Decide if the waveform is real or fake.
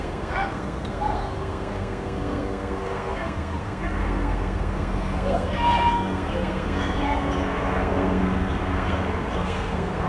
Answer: fake